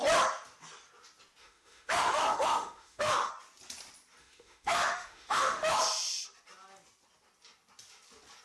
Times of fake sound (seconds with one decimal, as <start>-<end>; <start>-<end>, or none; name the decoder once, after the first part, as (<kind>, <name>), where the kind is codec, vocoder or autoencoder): 1.4-3.3 (autoencoder, DAC-VAE); 4.2-5.8